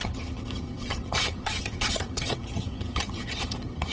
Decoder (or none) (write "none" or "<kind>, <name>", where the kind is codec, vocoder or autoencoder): vocoder, HiFi-GAN